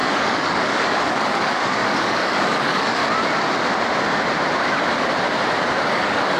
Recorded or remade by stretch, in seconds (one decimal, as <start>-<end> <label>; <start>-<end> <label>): 0.0-3.0 remade; 3.0-5.8 recorded; 5.8-6.4 remade